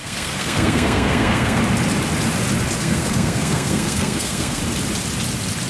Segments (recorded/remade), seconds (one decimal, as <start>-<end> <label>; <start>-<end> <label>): 0.0-1.6 remade; 1.6-2.8 recorded; 2.8-4.6 remade; 4.6-5.7 recorded